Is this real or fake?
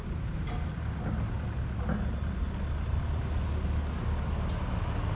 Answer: real